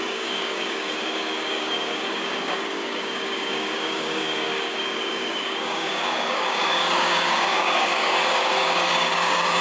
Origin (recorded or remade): remade